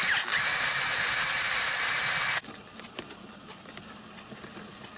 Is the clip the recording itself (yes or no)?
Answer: yes